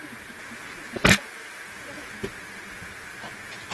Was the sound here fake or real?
real